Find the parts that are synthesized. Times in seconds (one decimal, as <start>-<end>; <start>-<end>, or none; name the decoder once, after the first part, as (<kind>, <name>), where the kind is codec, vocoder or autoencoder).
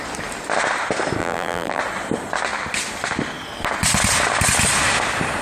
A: 1.2-1.8 (vocoder, BigVGAN v2)